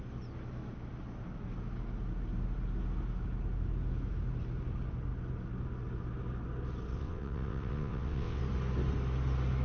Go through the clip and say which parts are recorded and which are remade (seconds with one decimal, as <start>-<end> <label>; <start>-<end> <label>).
0.0-6.9 recorded; 6.9-8.4 remade; 8.4-9.6 recorded